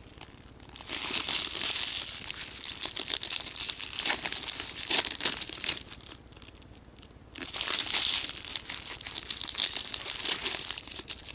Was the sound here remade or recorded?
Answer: recorded